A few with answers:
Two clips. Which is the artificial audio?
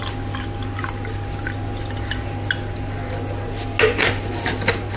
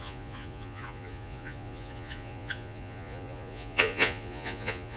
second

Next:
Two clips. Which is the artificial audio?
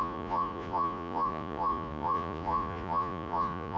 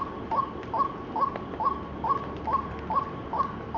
first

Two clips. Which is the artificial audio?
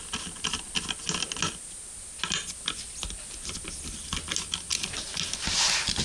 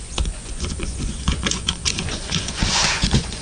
second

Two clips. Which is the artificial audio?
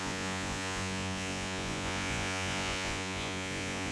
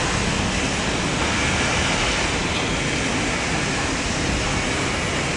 first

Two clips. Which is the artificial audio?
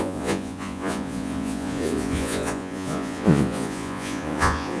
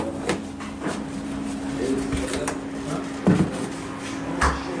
first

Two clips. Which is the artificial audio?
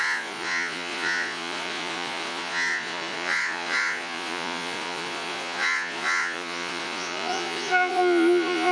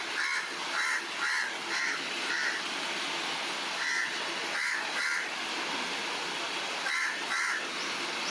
first